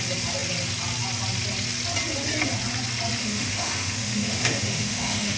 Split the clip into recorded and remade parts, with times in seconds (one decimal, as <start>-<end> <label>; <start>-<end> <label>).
0.0-3.2 recorded; 3.2-5.4 remade